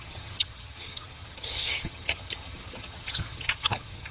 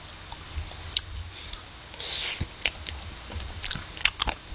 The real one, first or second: second